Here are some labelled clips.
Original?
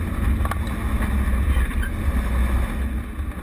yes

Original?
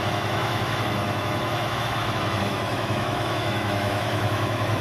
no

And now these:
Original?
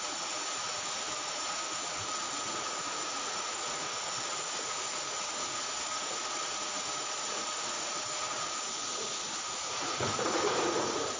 no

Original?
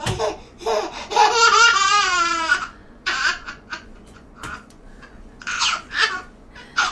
no